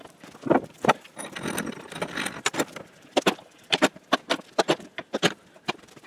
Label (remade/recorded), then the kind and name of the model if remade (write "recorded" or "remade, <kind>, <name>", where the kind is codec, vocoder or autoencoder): remade, vocoder, BigVGAN v2